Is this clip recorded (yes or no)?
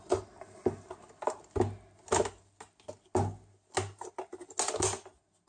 yes